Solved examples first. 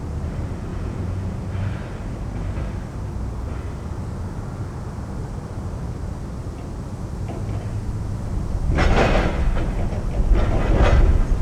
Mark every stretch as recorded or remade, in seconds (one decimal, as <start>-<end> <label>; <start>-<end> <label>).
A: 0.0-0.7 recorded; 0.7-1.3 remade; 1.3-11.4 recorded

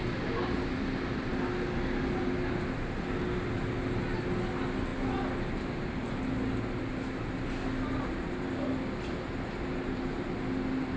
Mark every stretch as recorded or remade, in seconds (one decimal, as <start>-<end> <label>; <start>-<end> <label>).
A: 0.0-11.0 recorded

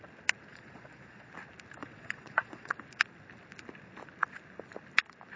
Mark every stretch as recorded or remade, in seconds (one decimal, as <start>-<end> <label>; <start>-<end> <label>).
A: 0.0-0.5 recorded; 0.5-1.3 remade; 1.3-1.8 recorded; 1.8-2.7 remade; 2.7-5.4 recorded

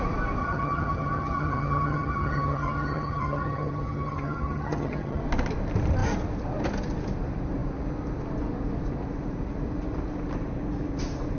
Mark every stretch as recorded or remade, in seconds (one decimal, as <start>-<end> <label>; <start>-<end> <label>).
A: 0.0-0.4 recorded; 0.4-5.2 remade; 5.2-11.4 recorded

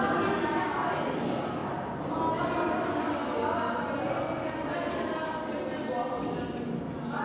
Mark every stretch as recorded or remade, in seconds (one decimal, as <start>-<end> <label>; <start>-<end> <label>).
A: 0.0-7.2 recorded